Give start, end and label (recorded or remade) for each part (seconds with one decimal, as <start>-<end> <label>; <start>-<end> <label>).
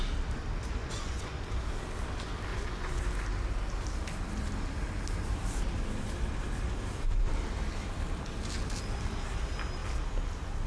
0.0-0.8 recorded; 0.8-1.4 remade; 1.4-2.5 recorded; 2.5-3.0 remade; 3.0-10.7 recorded